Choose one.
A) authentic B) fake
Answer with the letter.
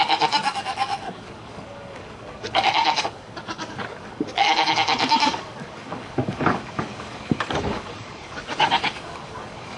B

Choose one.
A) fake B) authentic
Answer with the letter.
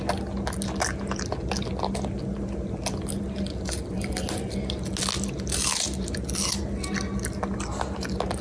B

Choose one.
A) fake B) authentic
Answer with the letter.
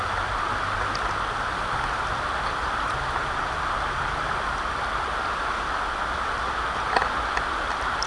B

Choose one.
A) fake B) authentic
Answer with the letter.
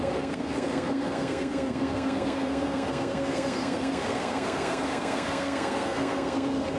A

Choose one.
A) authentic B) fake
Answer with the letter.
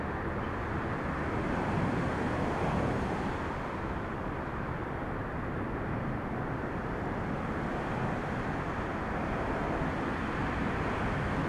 A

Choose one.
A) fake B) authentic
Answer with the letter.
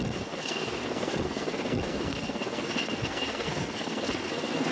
A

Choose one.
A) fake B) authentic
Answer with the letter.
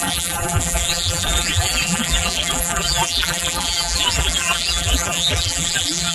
A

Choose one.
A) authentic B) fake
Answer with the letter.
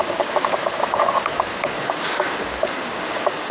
B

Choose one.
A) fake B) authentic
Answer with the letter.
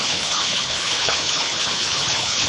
A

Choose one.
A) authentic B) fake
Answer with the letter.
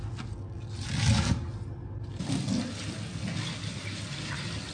A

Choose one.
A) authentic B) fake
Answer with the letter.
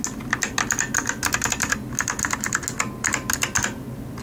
A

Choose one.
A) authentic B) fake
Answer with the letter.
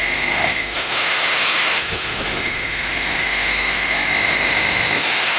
B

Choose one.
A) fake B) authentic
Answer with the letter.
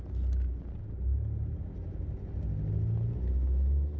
B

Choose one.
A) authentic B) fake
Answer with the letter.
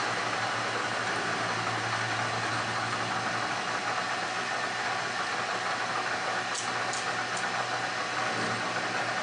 A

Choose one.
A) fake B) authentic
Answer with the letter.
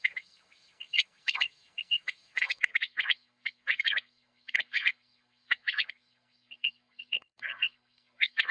A